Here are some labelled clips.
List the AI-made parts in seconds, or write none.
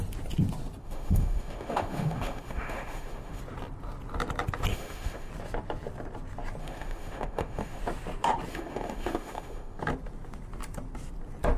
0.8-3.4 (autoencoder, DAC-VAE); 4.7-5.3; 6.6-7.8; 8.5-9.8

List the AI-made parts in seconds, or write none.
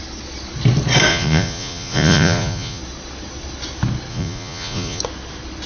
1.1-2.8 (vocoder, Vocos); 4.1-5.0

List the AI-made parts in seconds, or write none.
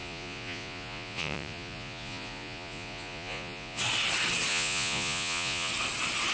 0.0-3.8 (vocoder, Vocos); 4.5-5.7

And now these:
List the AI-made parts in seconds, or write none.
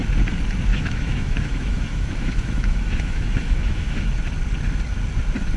0.7-4.1 (autoencoder, DAC-VAE)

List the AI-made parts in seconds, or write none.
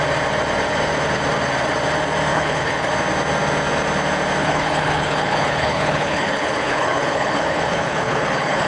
2.3-2.9 (codec, HILCodec); 4.4-8.7